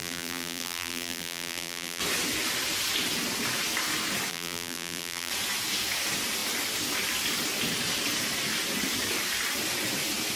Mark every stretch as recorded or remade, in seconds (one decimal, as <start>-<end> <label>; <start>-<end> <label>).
0.0-2.0 remade; 2.0-4.3 recorded; 4.3-5.3 remade; 5.3-10.4 recorded